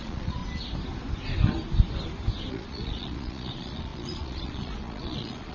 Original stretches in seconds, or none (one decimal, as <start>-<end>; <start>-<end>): 0.4-2.5